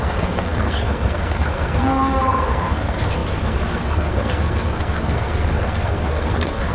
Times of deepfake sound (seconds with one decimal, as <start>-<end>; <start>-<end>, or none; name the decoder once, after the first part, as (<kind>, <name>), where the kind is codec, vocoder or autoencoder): 0.0-6.7 (codec, SNAC)